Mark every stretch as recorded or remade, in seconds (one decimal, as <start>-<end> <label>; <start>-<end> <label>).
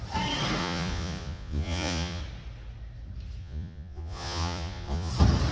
0.0-0.6 recorded; 0.6-2.2 remade; 2.2-3.4 recorded; 3.4-5.1 remade; 5.1-5.5 recorded